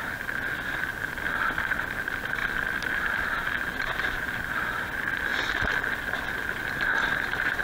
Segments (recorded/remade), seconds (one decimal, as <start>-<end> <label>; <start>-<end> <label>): 0.0-7.6 recorded